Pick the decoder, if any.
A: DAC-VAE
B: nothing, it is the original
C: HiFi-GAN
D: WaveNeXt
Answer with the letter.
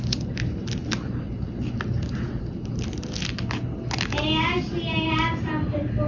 B